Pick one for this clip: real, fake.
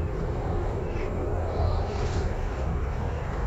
fake